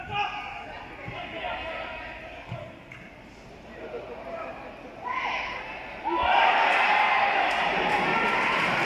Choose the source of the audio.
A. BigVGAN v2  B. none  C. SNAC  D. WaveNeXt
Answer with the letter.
B